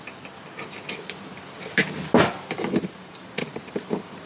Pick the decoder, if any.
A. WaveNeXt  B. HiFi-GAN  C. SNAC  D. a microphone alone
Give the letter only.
D